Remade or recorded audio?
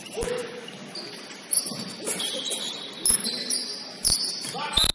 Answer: recorded